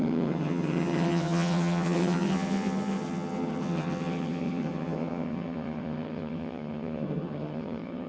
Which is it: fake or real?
fake